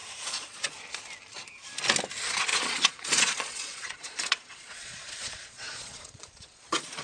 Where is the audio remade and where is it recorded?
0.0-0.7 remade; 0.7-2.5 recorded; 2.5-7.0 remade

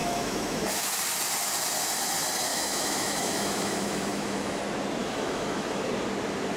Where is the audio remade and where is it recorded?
0.0-0.9 remade; 0.9-2.5 recorded; 2.5-4.6 remade; 4.6-5.0 recorded; 5.0-5.9 remade; 5.9-6.6 recorded

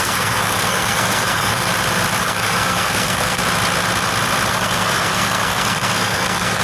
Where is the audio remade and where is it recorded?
0.0-1.7 remade; 1.7-2.2 recorded; 2.2-3.4 remade; 3.4-4.5 recorded; 4.5-6.6 remade

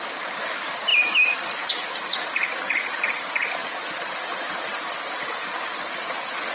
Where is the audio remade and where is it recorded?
0.0-6.5 recorded

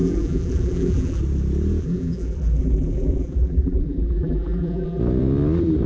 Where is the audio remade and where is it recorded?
0.0-1.2 remade; 1.2-1.8 recorded; 1.8-5.0 remade; 5.0-5.9 recorded